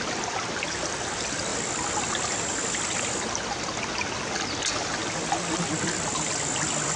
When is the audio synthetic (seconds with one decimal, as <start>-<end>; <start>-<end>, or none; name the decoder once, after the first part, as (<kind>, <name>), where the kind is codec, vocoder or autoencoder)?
none